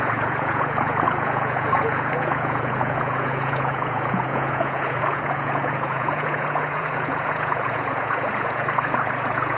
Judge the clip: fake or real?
fake